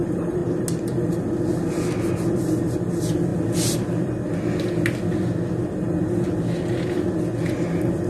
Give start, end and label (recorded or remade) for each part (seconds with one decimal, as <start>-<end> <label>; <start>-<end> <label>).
0.0-0.4 remade; 0.4-2.6 recorded; 2.6-3.3 remade; 3.3-8.1 recorded